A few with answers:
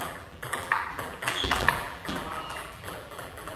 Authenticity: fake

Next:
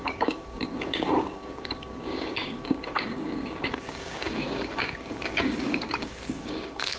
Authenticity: fake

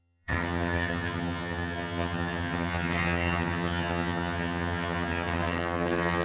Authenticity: fake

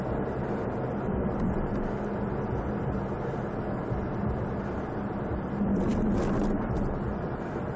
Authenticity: real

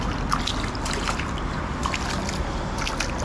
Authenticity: real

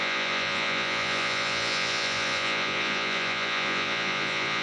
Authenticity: fake